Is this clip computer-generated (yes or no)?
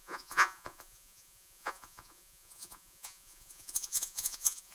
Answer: yes